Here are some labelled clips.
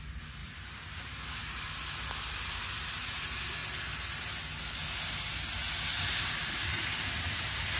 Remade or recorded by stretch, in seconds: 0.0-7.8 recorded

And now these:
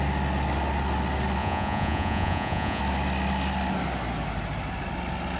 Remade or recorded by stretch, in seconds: 0.0-1.4 recorded; 1.4-2.8 remade; 2.8-5.4 recorded

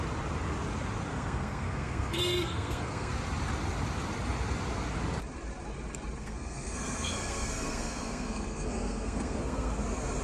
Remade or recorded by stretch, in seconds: 0.0-1.1 recorded; 1.1-3.1 remade; 3.1-6.2 recorded; 6.2-9.7 remade; 9.7-10.2 recorded

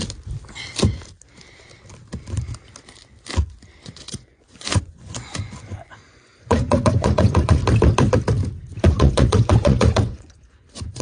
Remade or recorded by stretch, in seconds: 0.0-3.8 recorded; 3.8-7.6 remade; 7.6-8.8 recorded; 8.8-11.0 remade